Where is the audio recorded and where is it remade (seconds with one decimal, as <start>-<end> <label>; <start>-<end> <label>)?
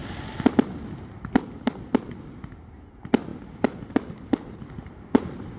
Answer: 0.0-5.6 recorded